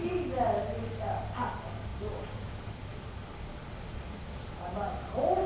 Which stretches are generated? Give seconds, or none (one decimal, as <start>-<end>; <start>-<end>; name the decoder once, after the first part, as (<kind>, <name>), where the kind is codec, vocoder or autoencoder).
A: none